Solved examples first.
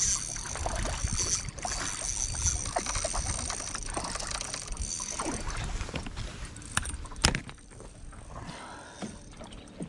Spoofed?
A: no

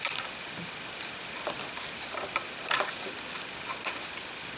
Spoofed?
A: no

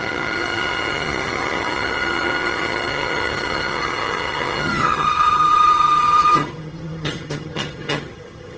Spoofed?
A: yes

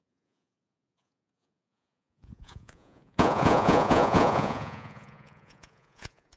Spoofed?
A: yes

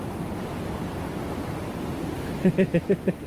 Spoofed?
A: no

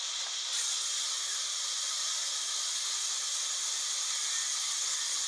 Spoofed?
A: no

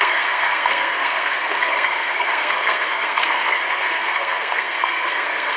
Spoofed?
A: yes